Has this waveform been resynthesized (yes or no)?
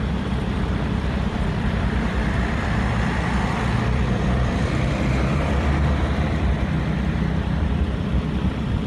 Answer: yes